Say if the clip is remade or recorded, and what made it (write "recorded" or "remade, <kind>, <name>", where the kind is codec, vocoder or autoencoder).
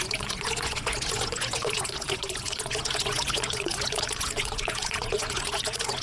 remade, vocoder, Vocos